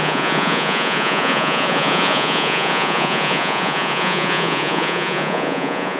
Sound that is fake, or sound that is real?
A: fake